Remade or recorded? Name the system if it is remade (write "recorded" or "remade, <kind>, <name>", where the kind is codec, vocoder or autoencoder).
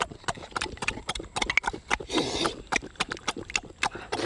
recorded